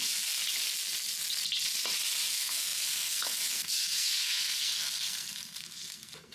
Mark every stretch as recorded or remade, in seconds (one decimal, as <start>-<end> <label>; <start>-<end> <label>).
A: 0.0-0.4 remade; 0.4-2.3 recorded; 2.3-6.3 remade